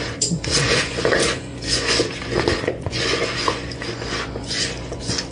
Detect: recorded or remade remade